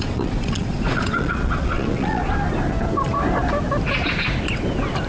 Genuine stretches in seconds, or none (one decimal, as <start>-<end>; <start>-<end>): 2.2-5.1